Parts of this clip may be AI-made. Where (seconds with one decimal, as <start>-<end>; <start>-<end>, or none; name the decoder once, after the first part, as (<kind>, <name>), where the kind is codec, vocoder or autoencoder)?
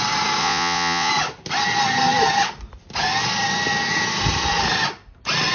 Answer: 0.4-1.1 (vocoder, Vocos)